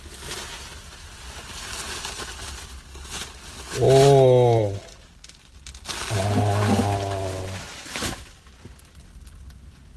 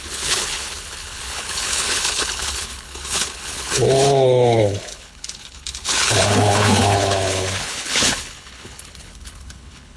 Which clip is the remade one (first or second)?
second